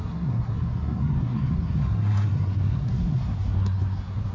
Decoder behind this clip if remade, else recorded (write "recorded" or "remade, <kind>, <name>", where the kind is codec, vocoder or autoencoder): remade, codec, SNAC